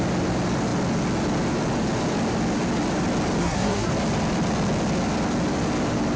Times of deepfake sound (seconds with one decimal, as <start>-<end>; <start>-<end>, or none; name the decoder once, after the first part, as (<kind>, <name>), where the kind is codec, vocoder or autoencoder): 3.4-3.9 (codec, SNAC)